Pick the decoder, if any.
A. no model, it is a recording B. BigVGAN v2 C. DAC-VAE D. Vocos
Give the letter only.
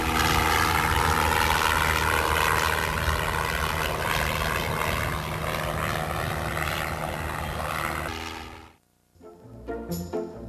A